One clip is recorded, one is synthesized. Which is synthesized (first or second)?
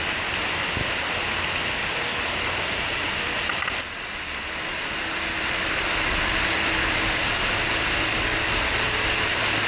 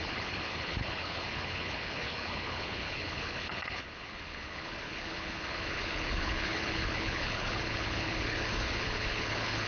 second